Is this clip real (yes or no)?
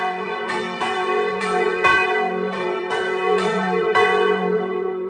no